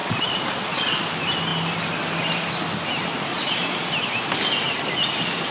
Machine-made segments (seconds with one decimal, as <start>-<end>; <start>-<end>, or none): 0.0-1.0; 3.3-3.9